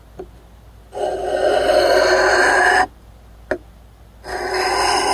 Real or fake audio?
fake